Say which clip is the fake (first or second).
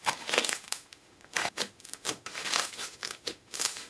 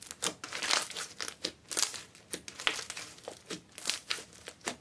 first